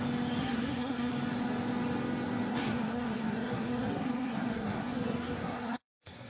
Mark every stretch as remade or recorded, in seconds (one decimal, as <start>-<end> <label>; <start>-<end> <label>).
0.0-0.4 recorded; 0.4-1.1 remade; 1.1-2.5 recorded; 2.5-6.3 remade